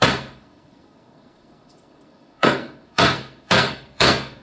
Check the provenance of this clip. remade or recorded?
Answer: remade